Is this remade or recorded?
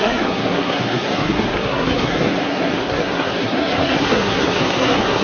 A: remade